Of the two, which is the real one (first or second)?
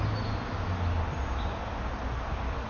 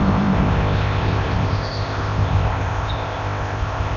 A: first